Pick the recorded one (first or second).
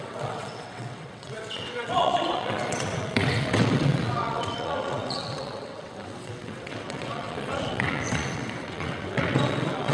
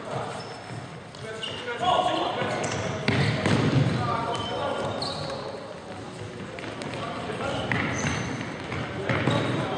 second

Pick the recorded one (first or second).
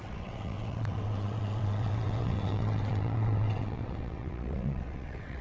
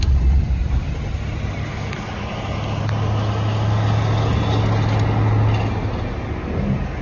second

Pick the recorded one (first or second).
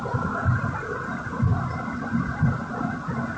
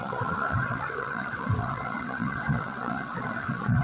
first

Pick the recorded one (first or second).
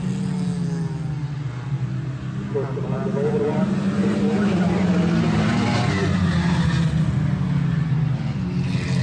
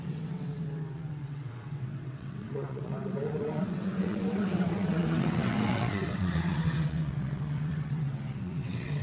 first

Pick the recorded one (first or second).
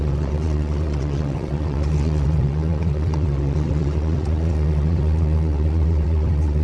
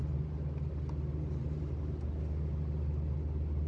second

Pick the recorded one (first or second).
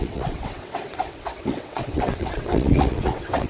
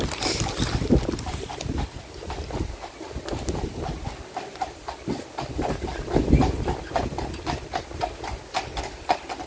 second